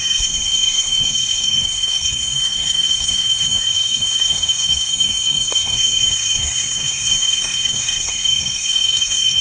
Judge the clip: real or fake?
fake